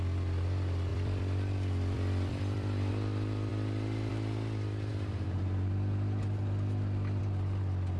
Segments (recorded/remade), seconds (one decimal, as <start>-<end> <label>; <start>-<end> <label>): 0.0-0.9 recorded; 0.9-2.9 remade; 2.9-3.5 recorded; 3.5-4.1 remade; 4.1-8.0 recorded